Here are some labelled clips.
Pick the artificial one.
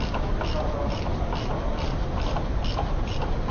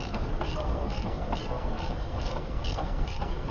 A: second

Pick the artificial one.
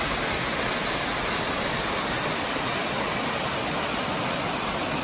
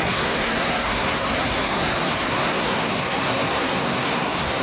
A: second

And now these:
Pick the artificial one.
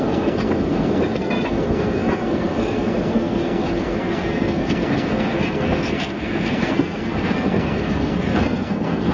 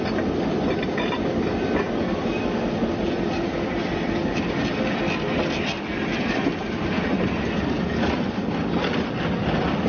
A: first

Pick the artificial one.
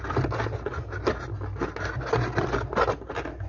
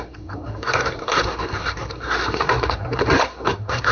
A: second